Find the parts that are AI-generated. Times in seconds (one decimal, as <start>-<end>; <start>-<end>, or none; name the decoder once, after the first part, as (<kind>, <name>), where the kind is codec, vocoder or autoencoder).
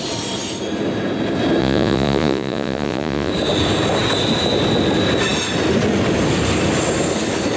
1.6-3.3 (vocoder, Vocos)